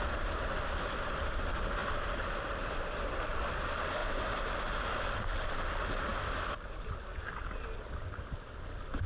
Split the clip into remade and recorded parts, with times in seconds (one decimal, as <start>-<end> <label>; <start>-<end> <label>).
0.0-1.8 recorded; 1.8-2.9 remade; 2.9-4.0 recorded; 4.0-4.6 remade; 4.6-6.1 recorded; 6.1-6.7 remade; 6.7-9.1 recorded